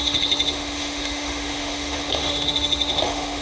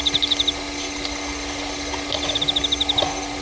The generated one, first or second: first